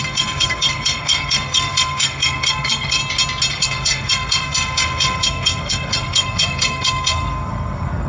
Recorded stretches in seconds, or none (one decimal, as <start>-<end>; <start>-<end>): 3.0-3.5

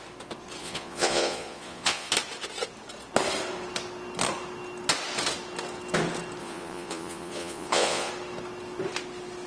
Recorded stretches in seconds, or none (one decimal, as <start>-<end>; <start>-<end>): 0.0-0.6; 2.1-6.4; 8.1-9.5

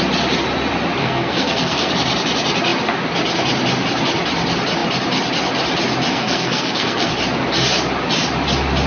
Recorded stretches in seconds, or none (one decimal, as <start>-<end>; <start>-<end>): 0.0-1.0; 1.9-6.1; 7.1-8.9

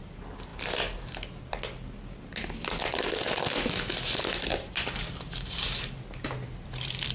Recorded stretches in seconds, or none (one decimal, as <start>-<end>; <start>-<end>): 0.0-7.1